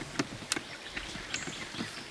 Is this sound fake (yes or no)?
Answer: no